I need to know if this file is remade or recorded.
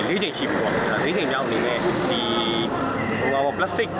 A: recorded